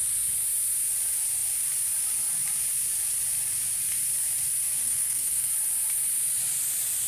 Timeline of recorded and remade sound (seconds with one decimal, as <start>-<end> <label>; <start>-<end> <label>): 0.0-4.8 recorded; 4.8-5.5 remade; 5.5-7.1 recorded